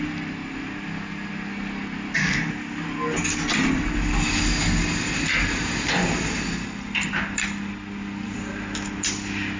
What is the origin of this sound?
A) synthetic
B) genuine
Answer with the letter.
B